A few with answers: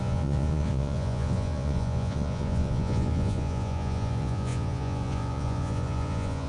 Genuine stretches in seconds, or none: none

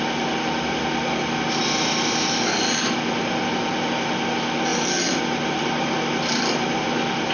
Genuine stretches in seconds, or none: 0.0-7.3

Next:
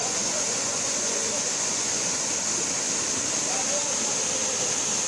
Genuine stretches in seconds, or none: 2.3-5.1